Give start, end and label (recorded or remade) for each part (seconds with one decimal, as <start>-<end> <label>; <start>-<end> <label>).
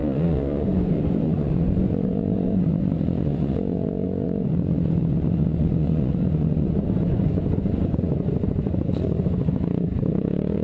0.0-10.6 remade